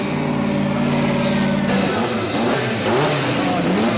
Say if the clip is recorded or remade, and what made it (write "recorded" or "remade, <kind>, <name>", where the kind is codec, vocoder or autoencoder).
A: recorded